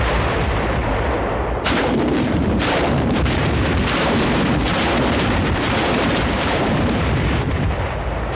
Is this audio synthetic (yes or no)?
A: yes